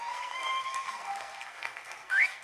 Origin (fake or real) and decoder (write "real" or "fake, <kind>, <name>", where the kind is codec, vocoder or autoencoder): fake, codec, SNAC